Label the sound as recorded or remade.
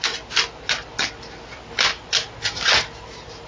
recorded